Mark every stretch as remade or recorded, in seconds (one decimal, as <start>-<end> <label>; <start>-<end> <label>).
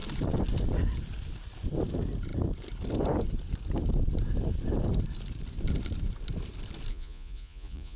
0.0-6.9 recorded; 6.9-8.0 remade